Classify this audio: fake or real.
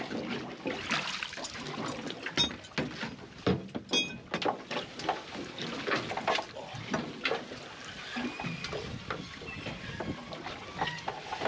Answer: real